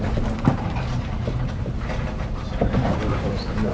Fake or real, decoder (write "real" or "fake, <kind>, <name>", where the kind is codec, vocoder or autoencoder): real